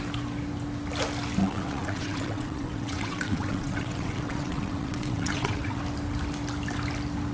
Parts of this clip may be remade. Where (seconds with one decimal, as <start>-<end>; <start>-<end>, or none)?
1.4-5.8